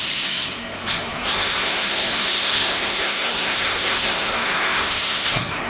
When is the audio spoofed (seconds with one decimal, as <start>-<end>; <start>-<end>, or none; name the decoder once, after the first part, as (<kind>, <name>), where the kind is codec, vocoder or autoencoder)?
0.0-5.7 (codec, SNAC)